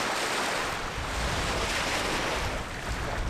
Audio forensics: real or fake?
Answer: real